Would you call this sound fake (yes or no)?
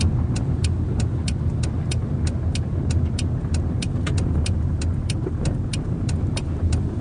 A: no